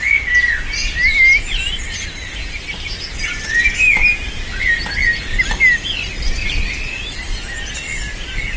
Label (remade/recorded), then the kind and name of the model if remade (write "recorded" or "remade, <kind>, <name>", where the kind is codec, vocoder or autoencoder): recorded